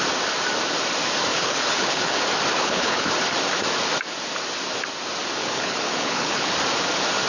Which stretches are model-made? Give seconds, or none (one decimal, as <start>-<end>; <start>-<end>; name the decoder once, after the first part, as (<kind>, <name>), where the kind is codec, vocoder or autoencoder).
1.3-2.2 (codec, HILCodec); 2.6-3.1; 5.4-6.5

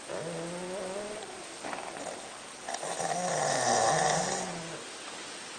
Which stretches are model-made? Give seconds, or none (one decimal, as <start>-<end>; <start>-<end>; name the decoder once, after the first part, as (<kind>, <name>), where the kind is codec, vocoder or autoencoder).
none